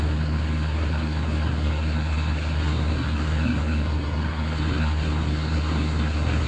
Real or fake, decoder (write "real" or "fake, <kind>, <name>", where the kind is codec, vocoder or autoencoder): fake, codec, SNAC